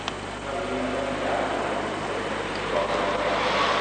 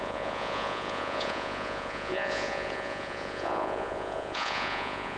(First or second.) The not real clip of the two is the second